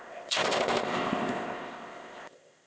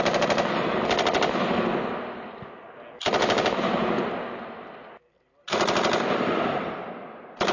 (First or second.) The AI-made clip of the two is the first